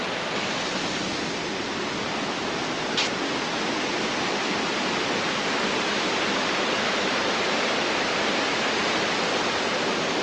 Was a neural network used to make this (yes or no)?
no